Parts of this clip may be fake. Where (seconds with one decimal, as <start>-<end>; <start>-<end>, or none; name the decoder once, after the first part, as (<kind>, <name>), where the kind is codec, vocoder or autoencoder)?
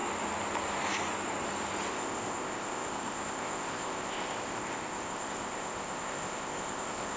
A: 1.9-7.2 (codec, ZipCodec)